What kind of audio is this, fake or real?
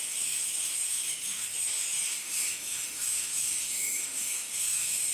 fake